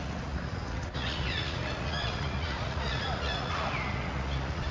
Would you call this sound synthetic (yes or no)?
yes